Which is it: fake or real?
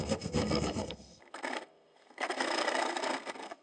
fake